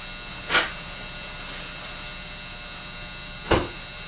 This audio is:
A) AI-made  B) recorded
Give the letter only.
B